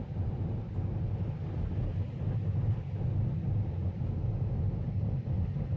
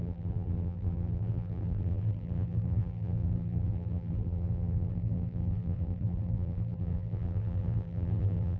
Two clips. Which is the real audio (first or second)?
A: first